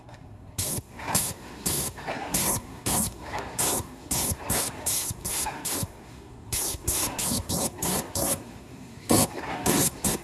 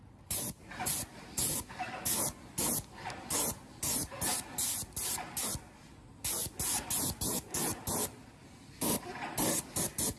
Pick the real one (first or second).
second